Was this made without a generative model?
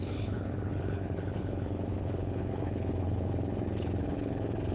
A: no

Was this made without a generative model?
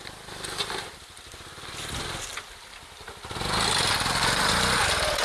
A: yes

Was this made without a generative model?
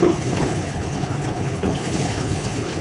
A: no